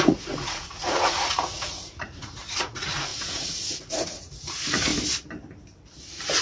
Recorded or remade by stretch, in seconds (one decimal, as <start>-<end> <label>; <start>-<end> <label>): 0.0-4.9 remade; 4.9-6.0 recorded; 6.0-6.4 remade